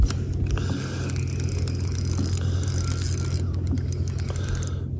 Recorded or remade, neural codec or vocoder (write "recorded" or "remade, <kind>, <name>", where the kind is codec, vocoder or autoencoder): recorded